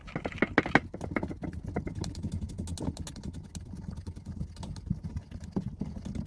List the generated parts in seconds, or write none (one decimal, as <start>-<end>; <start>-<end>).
none